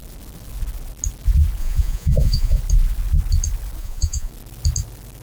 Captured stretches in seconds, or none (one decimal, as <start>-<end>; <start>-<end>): 0.0-1.6; 2.6-3.8; 4.3-5.2